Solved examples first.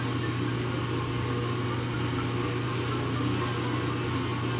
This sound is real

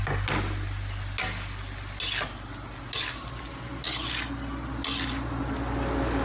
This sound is real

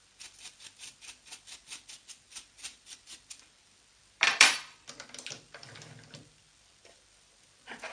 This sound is fake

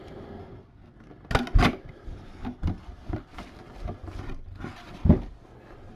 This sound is real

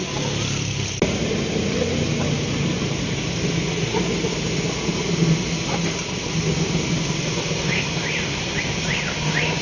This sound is real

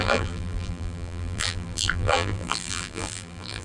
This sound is fake